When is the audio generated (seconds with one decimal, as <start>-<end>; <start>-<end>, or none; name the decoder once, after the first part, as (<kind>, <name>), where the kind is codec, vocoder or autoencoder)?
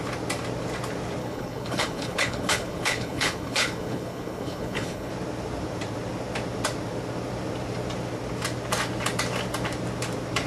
1.2-5.1 (codec, HILCodec)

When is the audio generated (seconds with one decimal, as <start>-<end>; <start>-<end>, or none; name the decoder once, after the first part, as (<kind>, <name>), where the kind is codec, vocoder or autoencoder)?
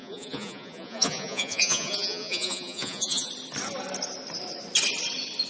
0.0-3.3 (vocoder, Vocos)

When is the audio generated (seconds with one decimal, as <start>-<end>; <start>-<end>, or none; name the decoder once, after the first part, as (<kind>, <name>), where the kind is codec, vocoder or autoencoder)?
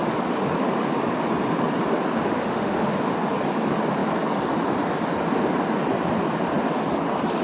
2.3-3.0 (autoencoder, DAC-VAE)